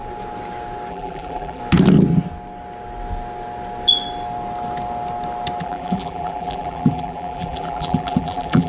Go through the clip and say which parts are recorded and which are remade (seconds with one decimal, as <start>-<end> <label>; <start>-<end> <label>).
0.0-0.9 recorded; 0.9-1.6 remade; 1.6-5.6 recorded; 5.6-8.7 remade